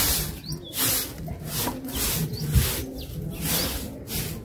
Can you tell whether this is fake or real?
real